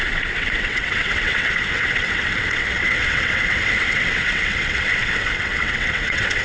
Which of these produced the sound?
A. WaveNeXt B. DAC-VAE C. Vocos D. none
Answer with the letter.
A